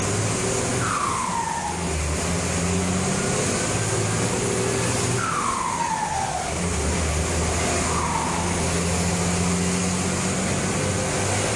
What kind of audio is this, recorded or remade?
recorded